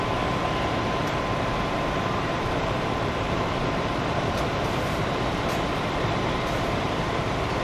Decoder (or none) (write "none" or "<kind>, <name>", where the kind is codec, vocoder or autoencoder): vocoder, BigVGAN v2